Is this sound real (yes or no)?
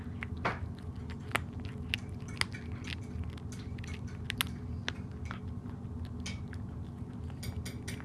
yes